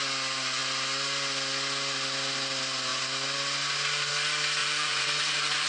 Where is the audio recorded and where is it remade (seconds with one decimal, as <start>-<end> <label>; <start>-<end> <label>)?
0.0-4.6 recorded; 4.6-5.7 remade